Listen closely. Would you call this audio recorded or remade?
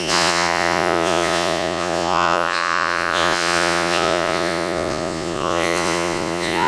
remade